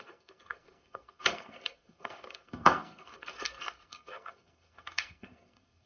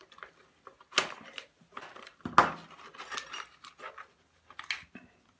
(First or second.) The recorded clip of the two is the second